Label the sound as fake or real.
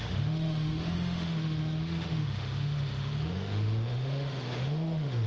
fake